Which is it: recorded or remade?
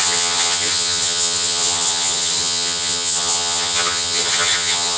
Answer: remade